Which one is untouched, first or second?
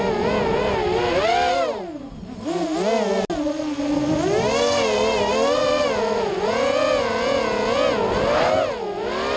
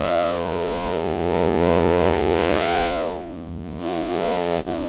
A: first